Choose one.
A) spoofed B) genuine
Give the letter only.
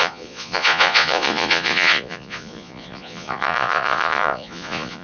A